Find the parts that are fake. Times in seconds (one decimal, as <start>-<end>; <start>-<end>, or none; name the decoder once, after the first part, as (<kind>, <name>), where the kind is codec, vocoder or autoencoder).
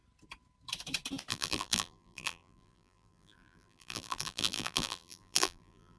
1.3-6.0 (vocoder, BigVGAN v2)